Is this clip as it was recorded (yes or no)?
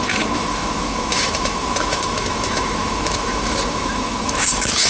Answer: no